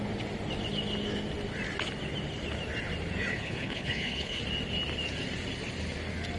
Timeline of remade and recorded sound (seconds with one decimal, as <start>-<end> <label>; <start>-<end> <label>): 0.0-3.3 recorded; 3.3-4.4 remade; 4.4-6.4 recorded